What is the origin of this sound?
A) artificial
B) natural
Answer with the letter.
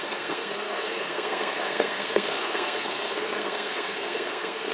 A